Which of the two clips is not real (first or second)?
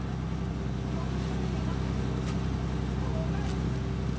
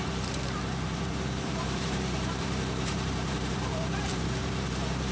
second